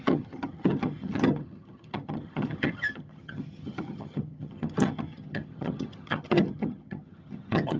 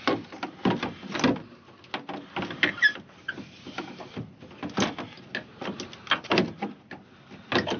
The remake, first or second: first